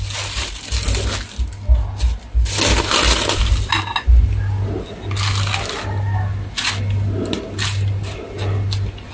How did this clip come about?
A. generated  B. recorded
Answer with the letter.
B